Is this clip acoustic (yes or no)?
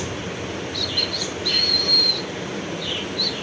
yes